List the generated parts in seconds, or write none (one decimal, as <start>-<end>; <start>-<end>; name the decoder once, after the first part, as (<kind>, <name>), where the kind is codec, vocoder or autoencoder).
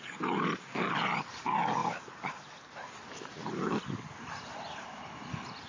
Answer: none